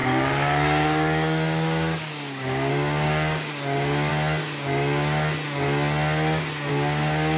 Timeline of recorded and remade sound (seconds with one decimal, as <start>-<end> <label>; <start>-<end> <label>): 0.0-4.1 remade; 4.1-6.7 recorded; 6.7-7.4 remade